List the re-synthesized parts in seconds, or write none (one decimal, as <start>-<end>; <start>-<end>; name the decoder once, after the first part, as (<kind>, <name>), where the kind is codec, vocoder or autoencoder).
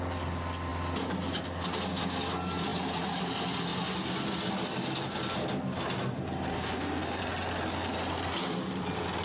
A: 6.5-7.2 (codec, SNAC)